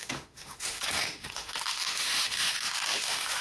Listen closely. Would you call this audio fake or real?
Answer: fake